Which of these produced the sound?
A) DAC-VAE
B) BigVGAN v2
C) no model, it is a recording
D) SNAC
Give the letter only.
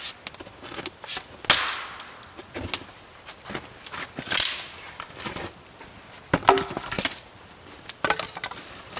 C